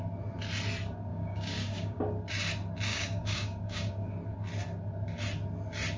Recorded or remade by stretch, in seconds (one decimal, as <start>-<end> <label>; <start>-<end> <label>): 0.0-1.1 recorded; 1.1-2.0 remade; 2.0-2.9 recorded; 2.9-4.1 remade; 4.1-6.0 recorded